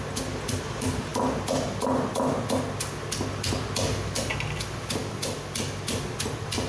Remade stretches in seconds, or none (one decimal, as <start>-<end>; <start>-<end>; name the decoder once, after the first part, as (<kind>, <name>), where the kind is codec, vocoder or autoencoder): none